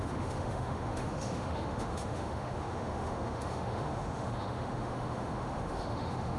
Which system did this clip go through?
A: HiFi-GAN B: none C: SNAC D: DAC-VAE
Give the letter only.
D